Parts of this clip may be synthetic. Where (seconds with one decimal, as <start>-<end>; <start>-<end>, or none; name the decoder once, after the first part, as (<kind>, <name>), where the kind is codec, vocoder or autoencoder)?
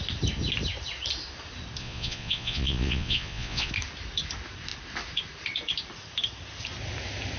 1.8-3.7 (vocoder, Vocos)